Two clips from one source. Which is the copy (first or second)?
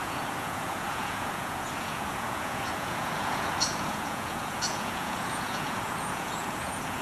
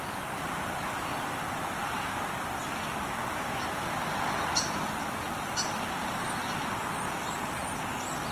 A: first